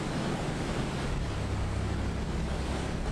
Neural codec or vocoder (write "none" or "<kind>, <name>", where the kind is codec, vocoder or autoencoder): codec, DAC